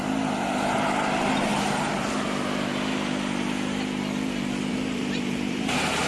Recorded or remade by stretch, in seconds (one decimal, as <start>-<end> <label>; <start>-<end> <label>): 0.0-1.5 recorded; 1.5-2.1 remade; 2.1-4.7 recorded; 4.7-6.1 remade